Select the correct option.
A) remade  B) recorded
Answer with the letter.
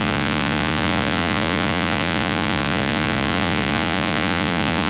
A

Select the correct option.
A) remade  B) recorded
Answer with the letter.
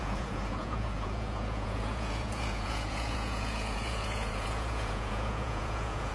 A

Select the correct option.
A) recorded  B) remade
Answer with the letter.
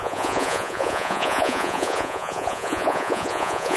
B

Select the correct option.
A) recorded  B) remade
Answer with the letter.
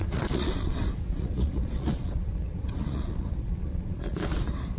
B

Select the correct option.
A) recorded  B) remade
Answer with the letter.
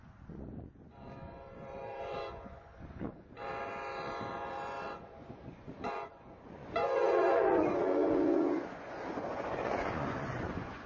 B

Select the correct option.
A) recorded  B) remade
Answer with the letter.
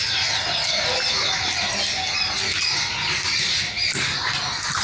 A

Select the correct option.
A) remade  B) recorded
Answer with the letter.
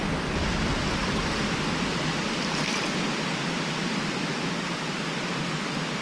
B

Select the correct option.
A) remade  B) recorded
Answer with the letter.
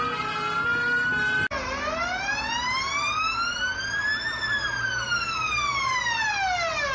B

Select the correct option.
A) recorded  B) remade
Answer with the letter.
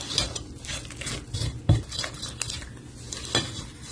A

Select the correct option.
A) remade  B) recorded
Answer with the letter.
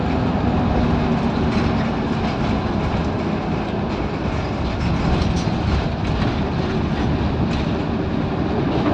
B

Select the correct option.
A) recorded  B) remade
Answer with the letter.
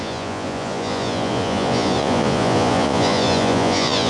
B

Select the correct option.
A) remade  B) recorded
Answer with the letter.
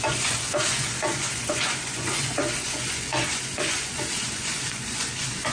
A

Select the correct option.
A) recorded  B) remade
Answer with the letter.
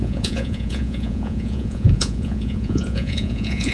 B